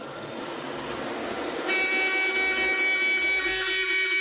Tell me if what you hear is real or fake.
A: real